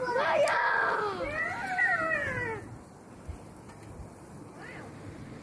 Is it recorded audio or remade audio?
recorded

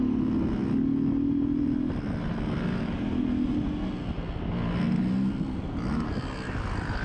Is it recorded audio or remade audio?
recorded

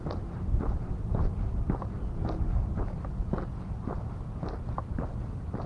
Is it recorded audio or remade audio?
recorded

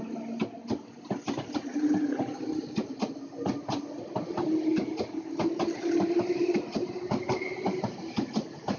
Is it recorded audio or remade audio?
recorded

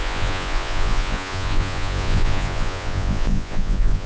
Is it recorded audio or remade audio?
remade